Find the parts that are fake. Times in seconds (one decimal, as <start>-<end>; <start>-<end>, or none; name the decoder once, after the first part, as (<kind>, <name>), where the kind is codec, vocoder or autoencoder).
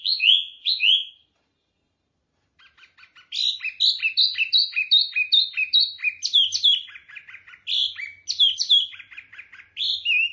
0.0-1.1 (vocoder, Vocos)